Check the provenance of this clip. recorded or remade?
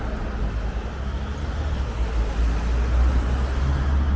recorded